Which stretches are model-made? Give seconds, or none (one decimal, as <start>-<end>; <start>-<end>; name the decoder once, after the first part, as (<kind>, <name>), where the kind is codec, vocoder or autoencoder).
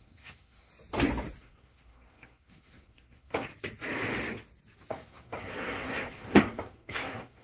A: 0.0-0.7 (codec, SNAC); 1.4-3.5; 4.9-7.4